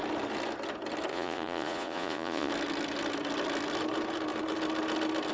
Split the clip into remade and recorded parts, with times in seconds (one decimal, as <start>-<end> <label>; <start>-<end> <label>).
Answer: 0.0-1.1 recorded; 1.1-2.5 remade; 2.5-5.3 recorded